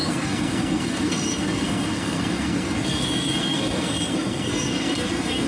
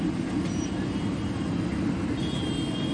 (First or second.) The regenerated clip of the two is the first